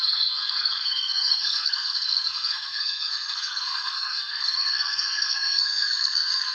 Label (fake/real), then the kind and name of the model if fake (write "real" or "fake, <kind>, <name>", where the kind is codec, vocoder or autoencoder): fake, codec, SNAC